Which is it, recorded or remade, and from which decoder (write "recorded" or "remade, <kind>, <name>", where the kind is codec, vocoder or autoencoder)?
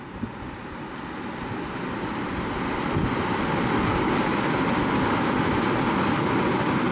remade, vocoder, BigVGAN v2